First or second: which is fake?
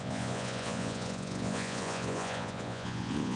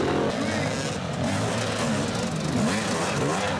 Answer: first